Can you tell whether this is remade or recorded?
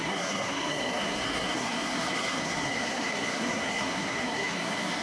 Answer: remade